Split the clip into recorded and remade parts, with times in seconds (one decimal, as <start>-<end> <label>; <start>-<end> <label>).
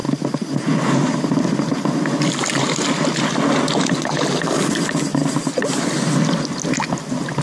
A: 0.0-7.4 recorded